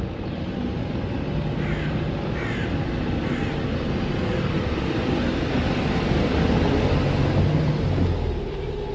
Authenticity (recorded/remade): recorded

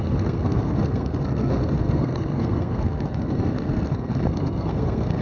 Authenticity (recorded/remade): remade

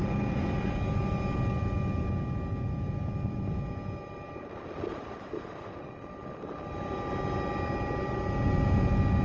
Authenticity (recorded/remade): recorded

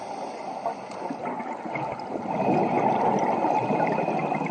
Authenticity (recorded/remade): recorded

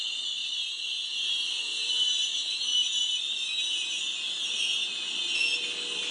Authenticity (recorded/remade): recorded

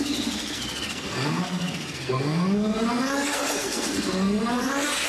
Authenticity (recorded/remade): remade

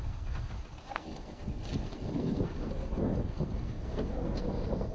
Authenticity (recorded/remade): remade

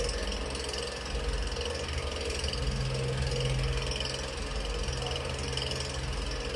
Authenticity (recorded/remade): recorded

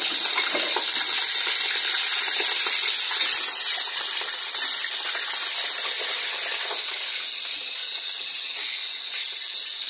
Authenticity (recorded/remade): recorded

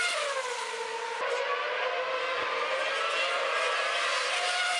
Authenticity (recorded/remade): recorded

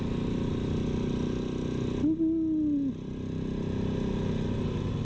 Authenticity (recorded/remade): recorded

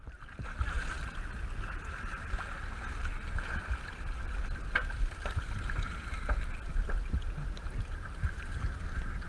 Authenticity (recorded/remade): recorded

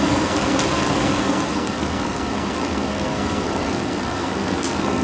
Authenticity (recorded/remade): remade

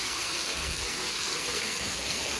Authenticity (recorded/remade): remade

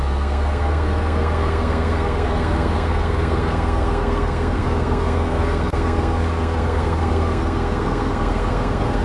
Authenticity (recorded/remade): remade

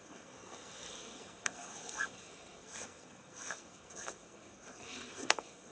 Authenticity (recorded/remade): remade